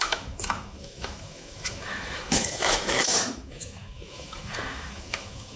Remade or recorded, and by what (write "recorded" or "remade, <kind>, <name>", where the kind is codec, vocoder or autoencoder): remade, autoencoder, DAC-VAE